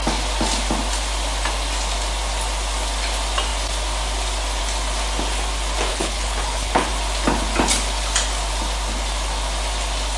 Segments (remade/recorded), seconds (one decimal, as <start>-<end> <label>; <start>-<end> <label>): 0.0-5.9 recorded; 5.9-6.9 remade; 6.9-10.2 recorded